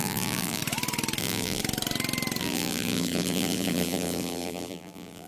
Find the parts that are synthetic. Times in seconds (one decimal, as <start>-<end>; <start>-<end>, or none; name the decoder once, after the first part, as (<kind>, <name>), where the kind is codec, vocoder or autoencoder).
0.0-0.6 (vocoder, BigVGAN v2); 1.2-1.6; 2.4-5.3

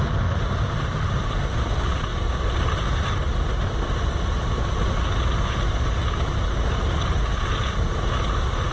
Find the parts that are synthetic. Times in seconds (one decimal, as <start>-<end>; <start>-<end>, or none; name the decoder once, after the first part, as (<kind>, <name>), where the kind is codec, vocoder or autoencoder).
none

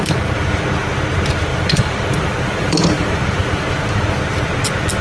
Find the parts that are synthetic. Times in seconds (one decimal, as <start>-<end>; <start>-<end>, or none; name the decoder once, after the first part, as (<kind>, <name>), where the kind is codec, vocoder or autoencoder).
1.5-4.2 (vocoder, BigVGAN v2)

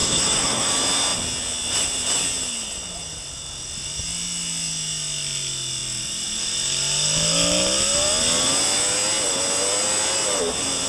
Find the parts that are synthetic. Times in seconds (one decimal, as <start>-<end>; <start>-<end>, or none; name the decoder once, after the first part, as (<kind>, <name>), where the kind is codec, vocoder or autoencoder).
0.0-0.7 (codec, SNAC)

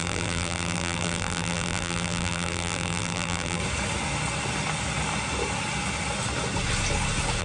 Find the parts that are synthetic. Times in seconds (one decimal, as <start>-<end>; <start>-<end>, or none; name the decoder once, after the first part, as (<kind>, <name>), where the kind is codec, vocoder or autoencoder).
0.0-3.6 (vocoder, BigVGAN v2)

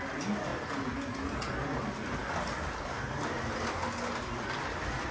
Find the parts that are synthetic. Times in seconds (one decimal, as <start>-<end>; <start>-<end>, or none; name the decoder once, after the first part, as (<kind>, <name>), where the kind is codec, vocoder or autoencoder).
none

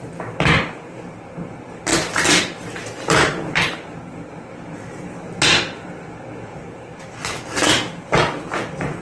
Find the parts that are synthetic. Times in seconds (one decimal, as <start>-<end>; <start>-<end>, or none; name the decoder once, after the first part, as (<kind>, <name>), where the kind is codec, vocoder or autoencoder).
none

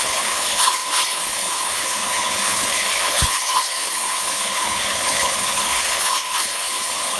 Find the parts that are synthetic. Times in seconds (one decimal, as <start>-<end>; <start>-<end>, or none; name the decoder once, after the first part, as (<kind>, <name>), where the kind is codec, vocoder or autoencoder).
0.0-7.2 (codec, HILCodec)